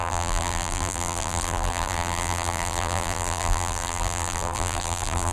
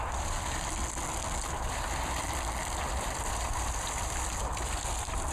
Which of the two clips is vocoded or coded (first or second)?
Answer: first